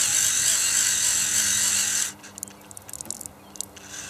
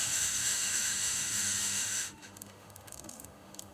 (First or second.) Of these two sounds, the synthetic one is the second